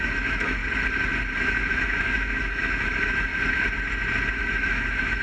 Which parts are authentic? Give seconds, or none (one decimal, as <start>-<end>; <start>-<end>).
0.6-1.4; 3.3-4.3